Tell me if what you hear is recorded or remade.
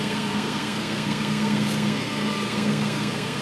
remade